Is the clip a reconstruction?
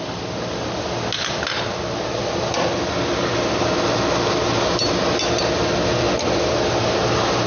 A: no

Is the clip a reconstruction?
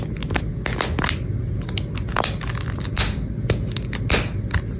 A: no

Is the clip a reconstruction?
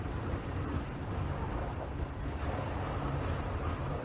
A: yes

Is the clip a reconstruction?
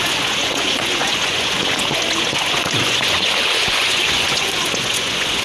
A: yes